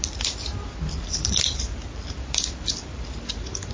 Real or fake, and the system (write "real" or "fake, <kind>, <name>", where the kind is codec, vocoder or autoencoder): fake, vocoder, BigVGAN v2